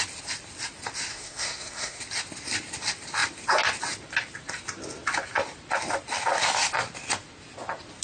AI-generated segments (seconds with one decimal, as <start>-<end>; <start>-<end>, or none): 1.1-2.0